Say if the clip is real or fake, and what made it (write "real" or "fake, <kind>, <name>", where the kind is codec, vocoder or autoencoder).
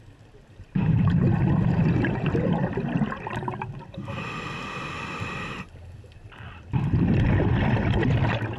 real